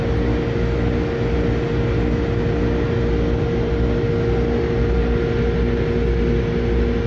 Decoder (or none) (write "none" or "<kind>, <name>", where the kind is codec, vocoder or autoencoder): none